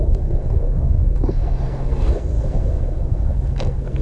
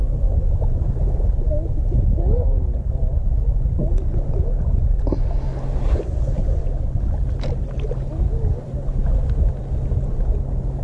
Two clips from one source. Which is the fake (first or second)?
first